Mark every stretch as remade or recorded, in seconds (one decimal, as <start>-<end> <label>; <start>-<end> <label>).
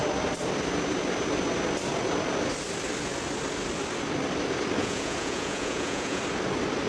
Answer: 0.0-4.8 recorded; 4.8-6.2 remade; 6.2-6.9 recorded